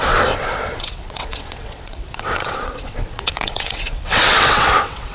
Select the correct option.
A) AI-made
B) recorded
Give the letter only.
A